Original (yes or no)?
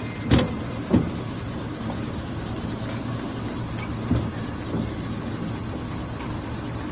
yes